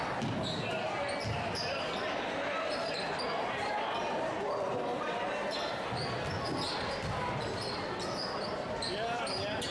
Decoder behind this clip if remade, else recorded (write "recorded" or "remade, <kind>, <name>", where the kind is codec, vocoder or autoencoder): recorded